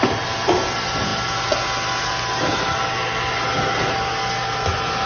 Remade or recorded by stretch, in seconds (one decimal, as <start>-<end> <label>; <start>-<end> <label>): 0.0-5.1 recorded